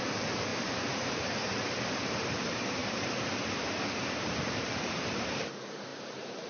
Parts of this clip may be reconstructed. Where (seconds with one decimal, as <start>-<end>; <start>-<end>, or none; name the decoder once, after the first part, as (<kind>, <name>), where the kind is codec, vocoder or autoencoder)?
0.0-6.5 (vocoder, BigVGAN v2)